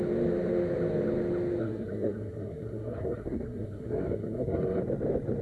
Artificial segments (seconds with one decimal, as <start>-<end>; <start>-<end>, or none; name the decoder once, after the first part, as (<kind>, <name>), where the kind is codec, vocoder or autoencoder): 1.6-4.8 (codec, SNAC)